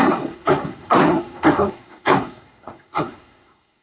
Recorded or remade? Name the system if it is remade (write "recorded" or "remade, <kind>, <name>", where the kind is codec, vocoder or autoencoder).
remade, codec, SNAC